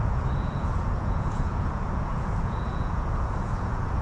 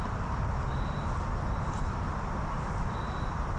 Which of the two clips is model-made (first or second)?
first